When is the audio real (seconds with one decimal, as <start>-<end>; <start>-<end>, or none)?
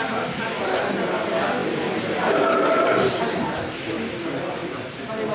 0.0-5.3